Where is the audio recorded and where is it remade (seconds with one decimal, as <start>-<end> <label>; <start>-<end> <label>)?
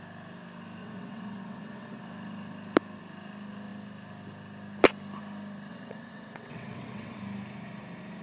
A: 0.0-0.8 recorded; 0.8-2.0 remade; 2.0-5.7 recorded; 5.7-7.2 remade; 7.2-8.2 recorded